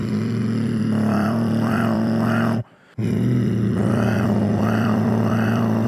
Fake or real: fake